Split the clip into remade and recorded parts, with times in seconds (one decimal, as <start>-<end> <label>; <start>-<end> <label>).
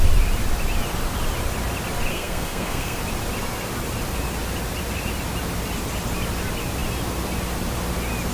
0.0-2.1 recorded; 2.1-3.0 remade; 3.0-8.3 recorded